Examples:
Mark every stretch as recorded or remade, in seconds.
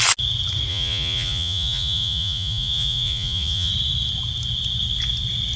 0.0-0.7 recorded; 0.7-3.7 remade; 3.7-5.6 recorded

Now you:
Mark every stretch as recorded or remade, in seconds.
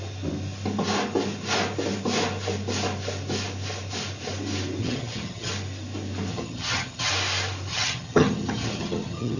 0.0-4.8 recorded; 4.8-5.5 remade; 5.5-6.3 recorded; 6.3-7.1 remade; 7.1-7.7 recorded; 7.7-9.4 remade